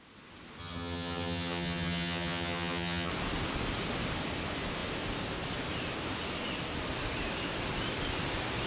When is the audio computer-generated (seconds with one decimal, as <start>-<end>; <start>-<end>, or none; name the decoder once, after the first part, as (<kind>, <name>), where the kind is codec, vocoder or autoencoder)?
0.6-3.1 (vocoder, HiFi-GAN)